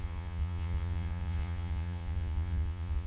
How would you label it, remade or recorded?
remade